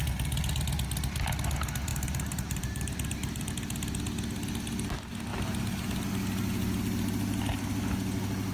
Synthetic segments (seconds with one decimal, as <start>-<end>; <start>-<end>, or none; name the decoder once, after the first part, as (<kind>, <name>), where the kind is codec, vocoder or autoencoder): 1.9-3.5 (vocoder, BigVGAN v2)